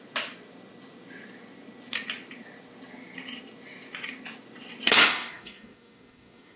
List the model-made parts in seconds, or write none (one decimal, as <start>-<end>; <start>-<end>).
5.0-6.6